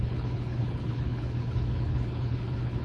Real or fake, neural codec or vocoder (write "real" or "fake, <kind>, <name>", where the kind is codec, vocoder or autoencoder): fake, codec, HILCodec